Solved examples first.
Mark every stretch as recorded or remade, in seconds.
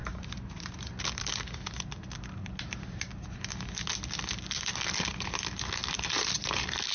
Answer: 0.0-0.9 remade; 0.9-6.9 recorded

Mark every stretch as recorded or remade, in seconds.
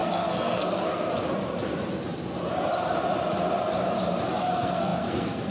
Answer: 0.0-1.1 remade; 1.1-4.4 recorded; 4.4-5.5 remade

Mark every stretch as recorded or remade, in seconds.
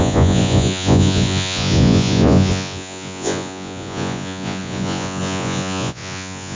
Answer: 0.0-6.6 remade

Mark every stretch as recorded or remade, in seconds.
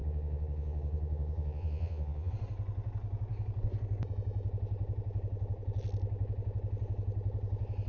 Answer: 0.0-2.3 remade; 2.3-7.9 recorded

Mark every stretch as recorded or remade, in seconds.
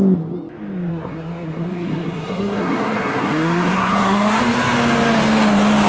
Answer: 0.0-0.9 recorded; 0.9-4.4 remade; 4.4-5.9 recorded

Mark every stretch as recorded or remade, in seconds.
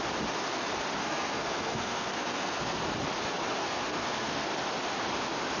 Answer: 0.0-1.0 recorded; 1.0-2.8 remade; 2.8-3.6 recorded; 3.6-4.5 remade; 4.5-5.6 recorded